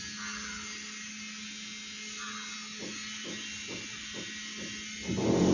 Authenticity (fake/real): real